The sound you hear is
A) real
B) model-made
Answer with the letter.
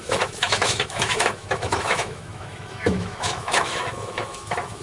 B